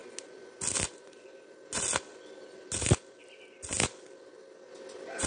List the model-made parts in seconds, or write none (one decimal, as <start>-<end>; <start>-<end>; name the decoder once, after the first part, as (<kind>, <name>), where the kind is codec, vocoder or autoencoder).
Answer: none